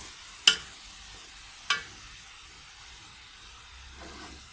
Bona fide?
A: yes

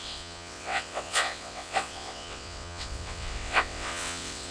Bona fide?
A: no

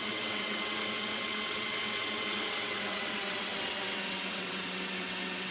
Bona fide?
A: no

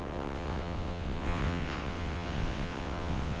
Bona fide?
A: no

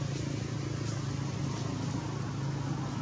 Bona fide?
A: yes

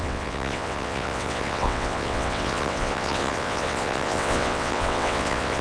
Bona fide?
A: no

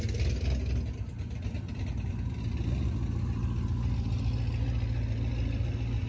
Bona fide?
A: yes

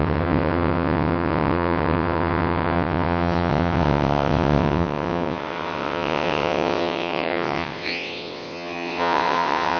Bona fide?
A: no